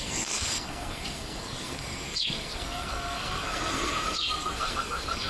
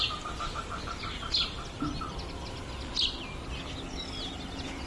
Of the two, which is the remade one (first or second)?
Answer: first